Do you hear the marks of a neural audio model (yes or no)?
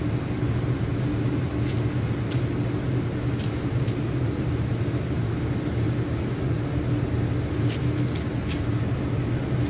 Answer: no